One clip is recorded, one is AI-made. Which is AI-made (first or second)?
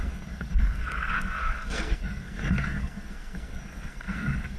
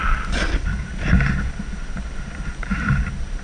first